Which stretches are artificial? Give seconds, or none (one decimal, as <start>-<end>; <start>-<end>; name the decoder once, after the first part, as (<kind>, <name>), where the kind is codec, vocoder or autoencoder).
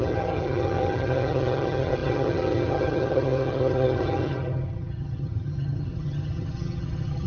0.0-7.3 (vocoder, HiFi-GAN)